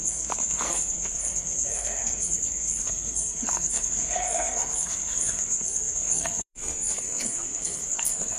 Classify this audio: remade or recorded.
remade